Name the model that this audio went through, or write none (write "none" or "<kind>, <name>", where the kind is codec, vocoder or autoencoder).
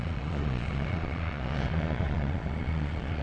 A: vocoder, Vocos